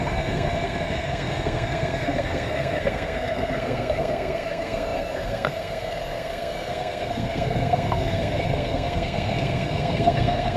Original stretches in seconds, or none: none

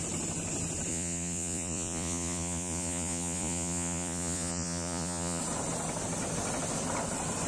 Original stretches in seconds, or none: 0.0-0.9; 5.4-7.5

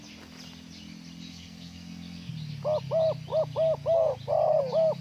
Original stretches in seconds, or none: 0.0-1.3; 2.3-5.0

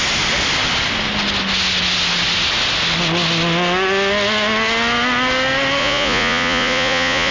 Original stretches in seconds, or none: 0.0-5.8